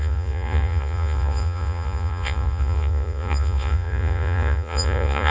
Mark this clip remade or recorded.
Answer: remade